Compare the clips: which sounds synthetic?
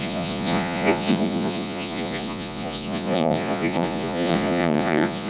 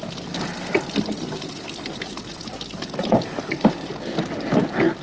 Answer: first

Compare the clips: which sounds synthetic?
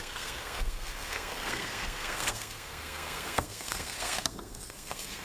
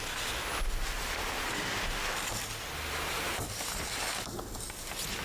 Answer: first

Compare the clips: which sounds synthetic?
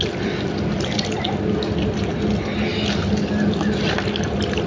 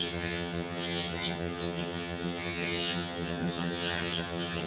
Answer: second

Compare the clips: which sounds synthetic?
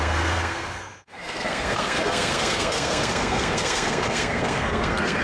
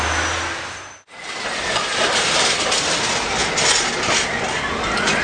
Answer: first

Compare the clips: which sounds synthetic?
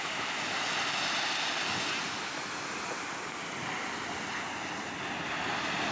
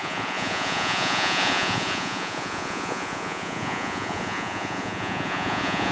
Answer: second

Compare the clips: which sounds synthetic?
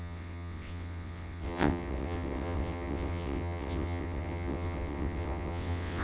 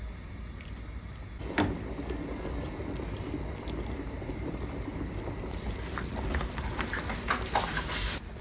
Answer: first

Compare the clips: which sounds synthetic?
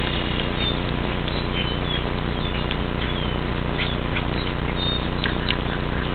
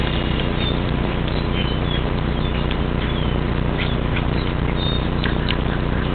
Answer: second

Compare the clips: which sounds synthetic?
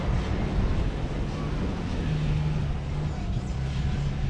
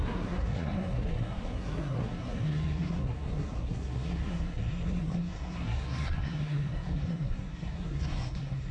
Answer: second